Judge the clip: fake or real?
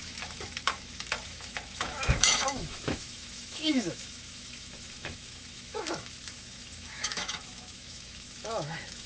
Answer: fake